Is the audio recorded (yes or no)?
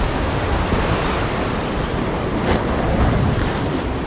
yes